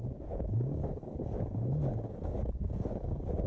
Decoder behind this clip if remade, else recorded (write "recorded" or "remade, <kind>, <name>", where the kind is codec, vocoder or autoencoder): remade, codec, DAC